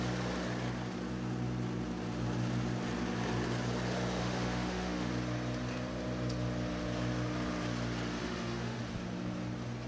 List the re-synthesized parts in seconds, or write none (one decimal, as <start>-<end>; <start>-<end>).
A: 4.2-5.1; 8.2-8.8